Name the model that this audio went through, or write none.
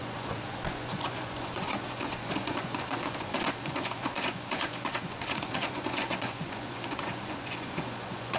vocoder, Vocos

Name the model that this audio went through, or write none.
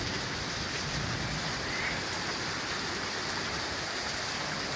none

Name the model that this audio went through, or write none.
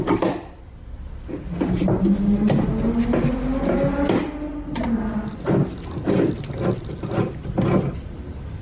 none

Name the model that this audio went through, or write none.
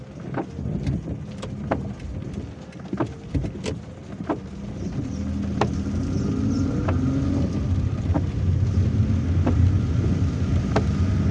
none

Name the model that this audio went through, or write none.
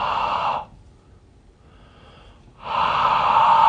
none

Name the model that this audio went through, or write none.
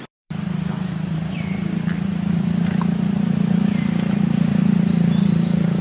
vocoder, BigVGAN v2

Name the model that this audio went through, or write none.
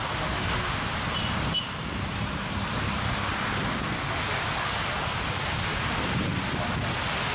none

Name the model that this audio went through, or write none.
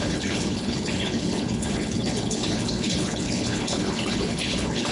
codec, HILCodec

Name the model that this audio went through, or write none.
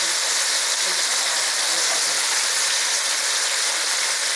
none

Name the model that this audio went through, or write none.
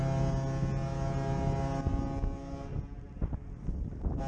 none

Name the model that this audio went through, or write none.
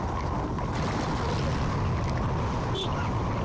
none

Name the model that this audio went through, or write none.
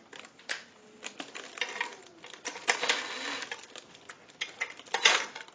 none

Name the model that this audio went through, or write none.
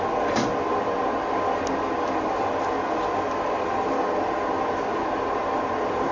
none